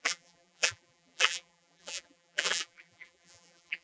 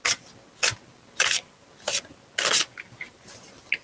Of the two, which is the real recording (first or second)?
second